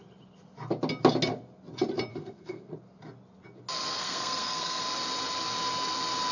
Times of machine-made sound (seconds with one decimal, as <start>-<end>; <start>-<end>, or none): 2.1-2.7; 4.0-4.8